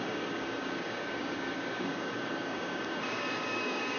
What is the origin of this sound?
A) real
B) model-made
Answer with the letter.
B